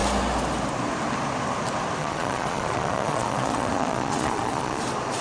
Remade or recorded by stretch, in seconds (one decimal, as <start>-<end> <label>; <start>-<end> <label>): 0.0-2.0 recorded; 2.0-4.8 remade; 4.8-5.2 recorded